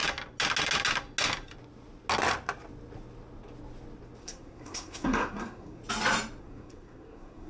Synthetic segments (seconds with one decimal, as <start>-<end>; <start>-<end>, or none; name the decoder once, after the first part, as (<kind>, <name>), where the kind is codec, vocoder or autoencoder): 4.2-5.8 (codec, SNAC); 6.4-7.5